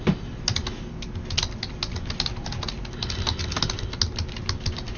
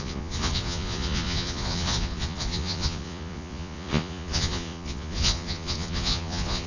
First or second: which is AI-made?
second